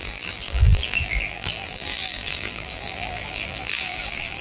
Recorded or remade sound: remade